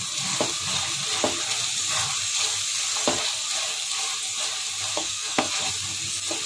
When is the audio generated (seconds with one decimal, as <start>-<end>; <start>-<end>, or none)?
4.9-5.5